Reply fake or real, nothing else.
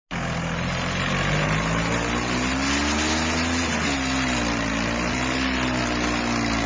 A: real